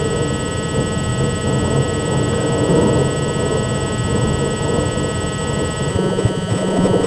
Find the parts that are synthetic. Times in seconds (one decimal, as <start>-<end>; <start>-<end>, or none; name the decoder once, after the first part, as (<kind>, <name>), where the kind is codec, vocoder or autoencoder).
5.9-7.1 (vocoder, Vocos)